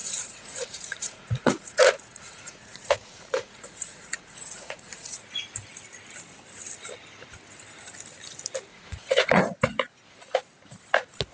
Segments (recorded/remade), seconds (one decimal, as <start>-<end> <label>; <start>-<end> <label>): 0.0-5.2 remade; 5.2-8.7 recorded; 8.7-9.4 remade; 9.4-11.3 recorded